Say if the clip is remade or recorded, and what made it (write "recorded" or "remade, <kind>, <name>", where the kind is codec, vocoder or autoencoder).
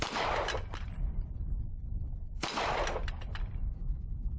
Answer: recorded